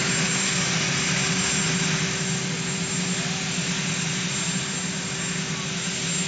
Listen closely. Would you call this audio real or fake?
real